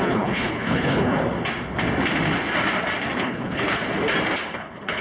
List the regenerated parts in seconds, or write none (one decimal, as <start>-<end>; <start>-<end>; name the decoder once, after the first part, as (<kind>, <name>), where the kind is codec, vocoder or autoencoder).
0.0-1.2 (codec, HILCodec); 3.2-3.8; 4.5-5.0